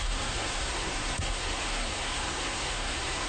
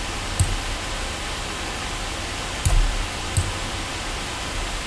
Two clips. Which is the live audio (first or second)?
second